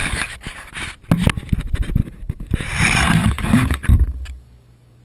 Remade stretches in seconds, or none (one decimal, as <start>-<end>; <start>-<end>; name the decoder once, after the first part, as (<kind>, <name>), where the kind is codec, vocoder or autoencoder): 0.0-0.7 (codec, DAC); 2.0-2.5; 3.2-5.0